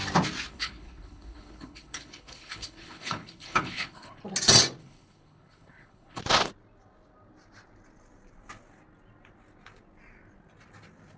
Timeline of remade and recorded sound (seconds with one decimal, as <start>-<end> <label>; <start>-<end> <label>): 0.0-0.5 recorded; 0.5-4.2 remade; 4.2-4.8 recorded; 4.8-6.2 remade; 6.2-11.2 recorded